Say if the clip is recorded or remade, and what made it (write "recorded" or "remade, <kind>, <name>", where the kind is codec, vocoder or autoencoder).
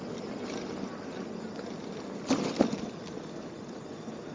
recorded